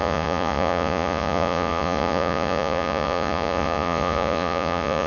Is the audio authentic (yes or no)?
no